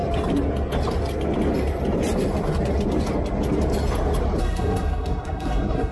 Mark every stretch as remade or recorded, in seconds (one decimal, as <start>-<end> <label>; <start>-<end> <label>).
0.0-4.4 recorded; 4.4-5.9 remade